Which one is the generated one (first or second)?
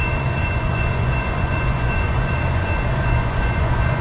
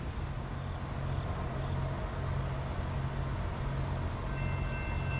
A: first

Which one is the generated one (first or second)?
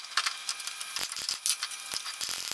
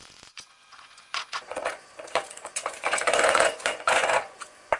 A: second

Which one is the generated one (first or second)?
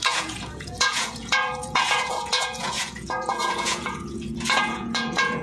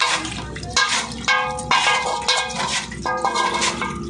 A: first